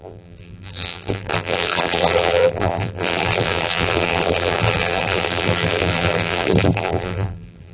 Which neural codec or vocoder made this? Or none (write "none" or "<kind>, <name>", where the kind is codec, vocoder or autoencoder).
vocoder, BigVGAN v2